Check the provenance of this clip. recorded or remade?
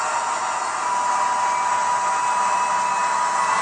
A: recorded